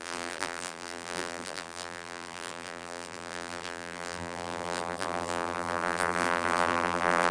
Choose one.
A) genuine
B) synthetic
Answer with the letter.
B